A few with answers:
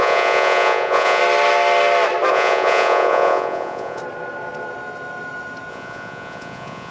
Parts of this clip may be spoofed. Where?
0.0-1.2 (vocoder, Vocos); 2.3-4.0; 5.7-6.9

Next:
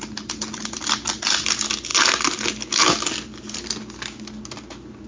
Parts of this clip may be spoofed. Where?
none

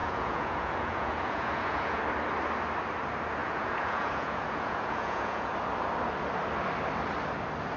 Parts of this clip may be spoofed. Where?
0.0-2.0 (vocoder, Vocos); 3.4-5.5

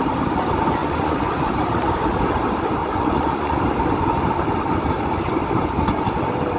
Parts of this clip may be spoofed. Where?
0.8-1.5 (vocoder, Vocos); 2.8-3.6

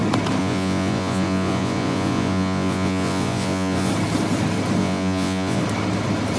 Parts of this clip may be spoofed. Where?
0.4-3.9 (vocoder, Vocos); 4.8-5.6

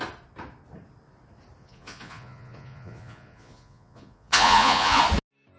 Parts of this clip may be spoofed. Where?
1.6-5.0 (vocoder, Vocos)